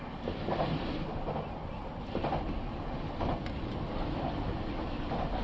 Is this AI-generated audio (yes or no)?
no